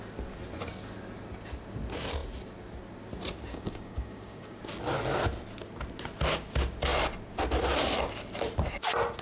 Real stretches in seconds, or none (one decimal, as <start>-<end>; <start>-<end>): 0.0-3.5; 4.6-9.2